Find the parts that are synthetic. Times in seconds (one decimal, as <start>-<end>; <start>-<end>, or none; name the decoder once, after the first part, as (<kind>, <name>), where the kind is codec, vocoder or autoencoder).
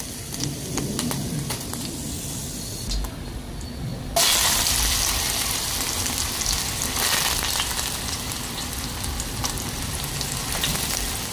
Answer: none